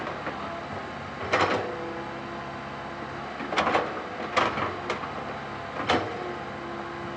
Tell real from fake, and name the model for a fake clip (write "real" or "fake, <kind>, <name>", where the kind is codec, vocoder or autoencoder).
real